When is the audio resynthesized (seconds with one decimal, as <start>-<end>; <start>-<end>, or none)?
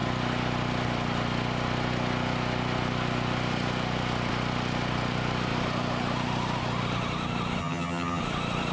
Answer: 7.6-8.2